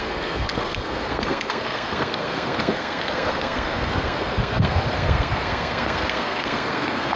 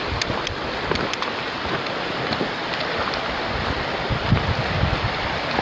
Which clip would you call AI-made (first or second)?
first